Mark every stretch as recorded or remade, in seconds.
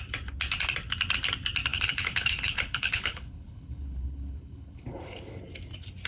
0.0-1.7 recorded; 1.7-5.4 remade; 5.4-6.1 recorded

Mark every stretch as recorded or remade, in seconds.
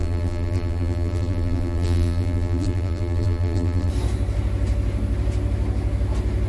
0.0-3.9 remade; 3.9-6.5 recorded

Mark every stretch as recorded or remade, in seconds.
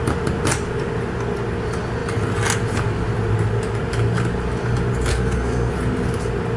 0.0-5.1 recorded; 5.1-5.7 remade; 5.7-6.6 recorded